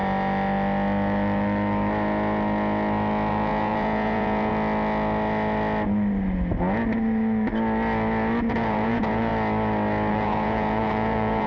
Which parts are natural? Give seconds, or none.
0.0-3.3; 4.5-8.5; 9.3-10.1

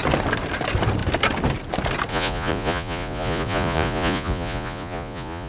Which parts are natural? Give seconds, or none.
0.0-2.1